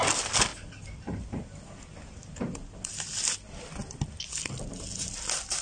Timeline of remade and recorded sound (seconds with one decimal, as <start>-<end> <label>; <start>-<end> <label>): 0.0-5.6 recorded